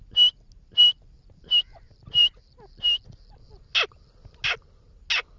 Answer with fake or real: real